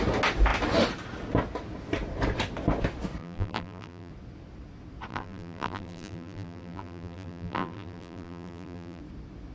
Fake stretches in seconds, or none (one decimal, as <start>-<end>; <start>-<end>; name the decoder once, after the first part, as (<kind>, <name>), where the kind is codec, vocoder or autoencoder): 3.2-4.1 (vocoder, BigVGAN v2); 5.1-9.0